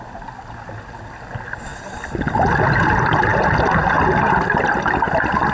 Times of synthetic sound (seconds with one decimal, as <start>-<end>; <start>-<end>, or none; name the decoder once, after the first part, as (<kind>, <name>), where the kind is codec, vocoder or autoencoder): none